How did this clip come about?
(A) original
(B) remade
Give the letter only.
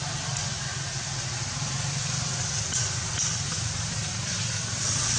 A